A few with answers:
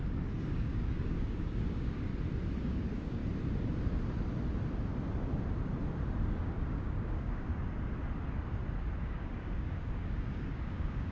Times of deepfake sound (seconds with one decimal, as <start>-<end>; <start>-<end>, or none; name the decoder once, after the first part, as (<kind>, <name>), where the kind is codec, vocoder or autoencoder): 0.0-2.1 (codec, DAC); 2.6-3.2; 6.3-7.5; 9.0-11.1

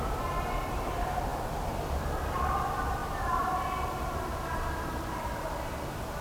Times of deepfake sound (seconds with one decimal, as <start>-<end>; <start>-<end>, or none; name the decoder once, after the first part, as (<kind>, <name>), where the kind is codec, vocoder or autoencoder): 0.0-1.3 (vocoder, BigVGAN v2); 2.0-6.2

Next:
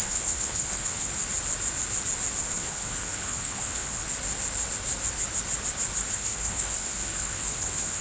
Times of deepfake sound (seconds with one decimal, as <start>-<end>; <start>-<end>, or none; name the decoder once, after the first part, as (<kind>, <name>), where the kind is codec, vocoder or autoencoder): 0.0-1.1 (codec, HILCodec); 2.4-4.0; 6.1-8.0

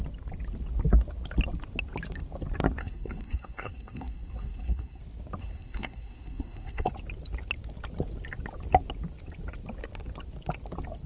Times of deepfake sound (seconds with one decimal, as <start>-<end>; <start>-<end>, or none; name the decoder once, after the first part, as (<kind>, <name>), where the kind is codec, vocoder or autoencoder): 2.8-5.0 (codec, SNAC); 5.4-6.9

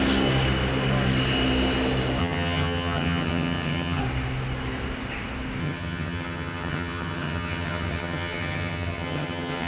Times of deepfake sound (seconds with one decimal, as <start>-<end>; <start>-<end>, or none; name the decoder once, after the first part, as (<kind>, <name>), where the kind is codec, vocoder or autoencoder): 2.2-4.0 (vocoder, HiFi-GAN); 5.6-9.7

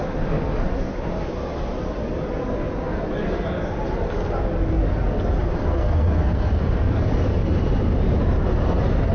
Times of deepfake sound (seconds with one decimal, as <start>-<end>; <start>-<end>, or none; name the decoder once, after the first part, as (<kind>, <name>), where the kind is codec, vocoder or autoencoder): 5.6-6.5 (codec, SNAC)